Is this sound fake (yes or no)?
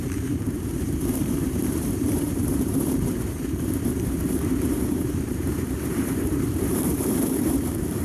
yes